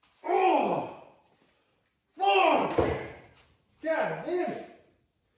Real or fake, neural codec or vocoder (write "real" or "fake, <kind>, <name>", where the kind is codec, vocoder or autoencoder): real